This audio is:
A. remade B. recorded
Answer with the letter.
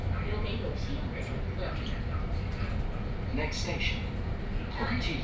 B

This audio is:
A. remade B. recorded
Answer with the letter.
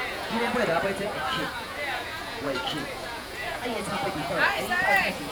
A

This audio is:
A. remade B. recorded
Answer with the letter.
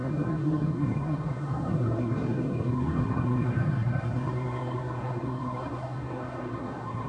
A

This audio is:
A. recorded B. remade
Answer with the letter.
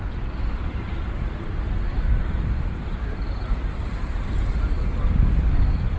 B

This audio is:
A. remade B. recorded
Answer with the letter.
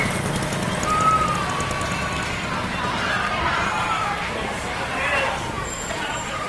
B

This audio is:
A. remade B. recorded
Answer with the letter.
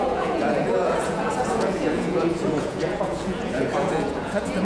A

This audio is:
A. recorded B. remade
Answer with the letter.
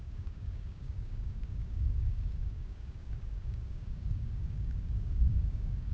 B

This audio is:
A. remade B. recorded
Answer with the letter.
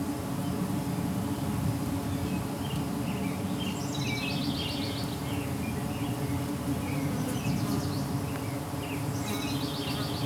B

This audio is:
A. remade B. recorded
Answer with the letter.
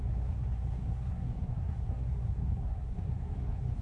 A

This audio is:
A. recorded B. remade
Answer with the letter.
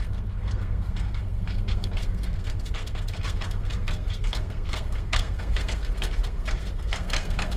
B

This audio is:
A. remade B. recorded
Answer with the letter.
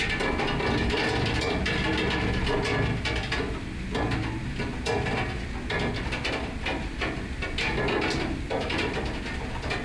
B